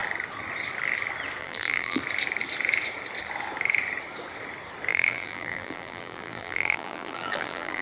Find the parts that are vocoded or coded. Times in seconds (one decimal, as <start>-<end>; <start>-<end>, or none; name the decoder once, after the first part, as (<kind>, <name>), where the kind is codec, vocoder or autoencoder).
1.4-2.0 (vocoder, BigVGAN v2); 4.9-7.8